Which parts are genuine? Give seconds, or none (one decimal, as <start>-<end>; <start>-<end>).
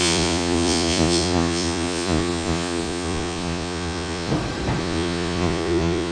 4.3-4.8